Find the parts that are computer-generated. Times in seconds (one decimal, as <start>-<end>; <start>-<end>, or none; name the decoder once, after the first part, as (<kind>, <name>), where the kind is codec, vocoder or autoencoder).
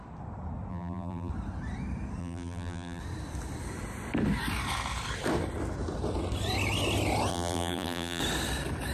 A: 0.7-1.3 (vocoder, BigVGAN v2); 2.2-3.0; 7.3-8.2